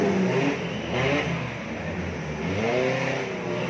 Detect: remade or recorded recorded